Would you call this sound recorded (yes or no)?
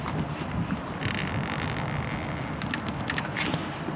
yes